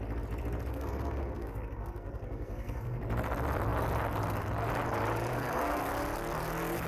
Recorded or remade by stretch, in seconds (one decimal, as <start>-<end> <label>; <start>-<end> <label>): 0.0-0.7 recorded; 0.7-3.0 remade; 3.0-5.3 recorded; 5.3-5.8 remade; 5.8-6.9 recorded